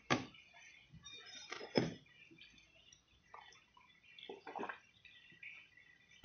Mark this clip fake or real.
real